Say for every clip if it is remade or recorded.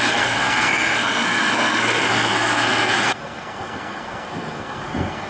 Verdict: remade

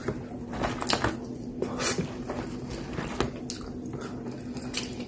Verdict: recorded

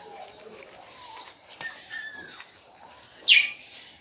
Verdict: recorded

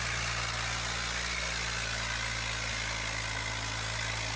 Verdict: recorded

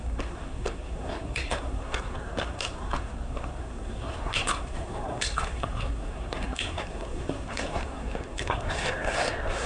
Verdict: remade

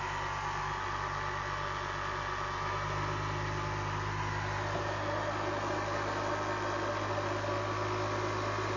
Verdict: recorded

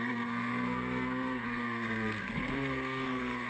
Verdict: remade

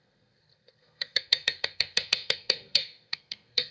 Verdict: remade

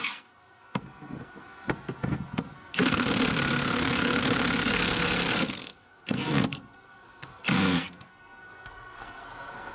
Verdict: remade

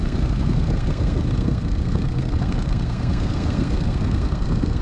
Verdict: remade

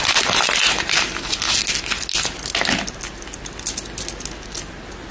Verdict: recorded